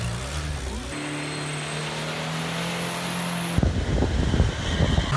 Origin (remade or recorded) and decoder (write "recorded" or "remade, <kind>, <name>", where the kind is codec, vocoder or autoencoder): recorded